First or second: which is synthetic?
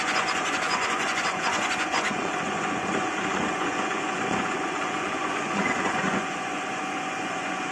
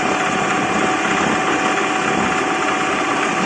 first